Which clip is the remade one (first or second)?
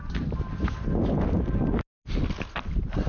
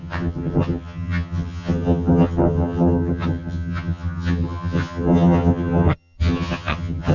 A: second